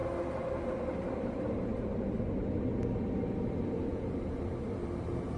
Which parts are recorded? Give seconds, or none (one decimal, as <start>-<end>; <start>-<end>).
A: 0.0-3.9; 4.4-5.4